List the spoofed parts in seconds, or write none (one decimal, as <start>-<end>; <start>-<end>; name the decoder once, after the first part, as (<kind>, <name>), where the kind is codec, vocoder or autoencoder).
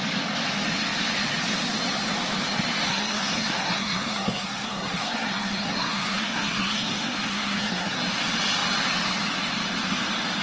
2.9-8.0 (codec, SNAC)